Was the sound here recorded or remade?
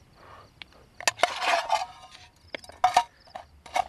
recorded